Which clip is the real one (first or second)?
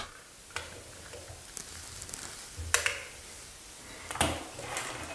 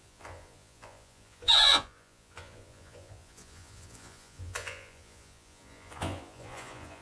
first